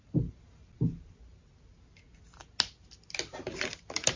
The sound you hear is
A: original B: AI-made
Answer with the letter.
A